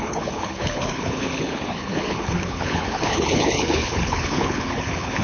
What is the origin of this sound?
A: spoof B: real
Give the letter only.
A